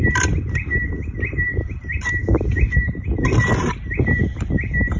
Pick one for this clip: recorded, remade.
recorded